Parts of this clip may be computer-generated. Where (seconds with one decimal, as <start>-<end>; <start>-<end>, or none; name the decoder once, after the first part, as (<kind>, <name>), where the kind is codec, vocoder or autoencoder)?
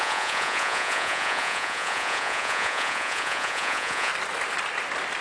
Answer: 0.0-4.1 (vocoder, Vocos)